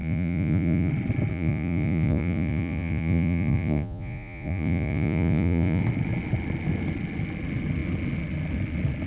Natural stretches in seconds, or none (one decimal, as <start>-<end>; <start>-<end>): 0.9-1.3; 5.8-9.1